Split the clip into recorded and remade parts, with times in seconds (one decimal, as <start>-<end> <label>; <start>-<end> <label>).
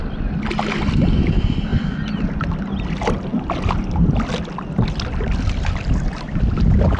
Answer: 0.0-7.0 recorded